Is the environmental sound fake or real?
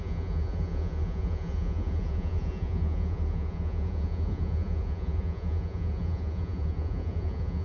fake